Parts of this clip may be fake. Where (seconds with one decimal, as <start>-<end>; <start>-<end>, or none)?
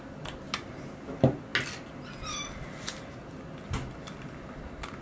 none